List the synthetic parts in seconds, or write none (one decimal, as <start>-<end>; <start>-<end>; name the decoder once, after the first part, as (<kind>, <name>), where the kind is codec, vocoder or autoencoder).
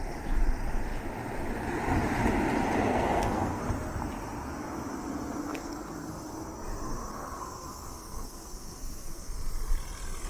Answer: 2.9-3.6 (codec, SNAC); 5.5-6.1; 7.1-9.3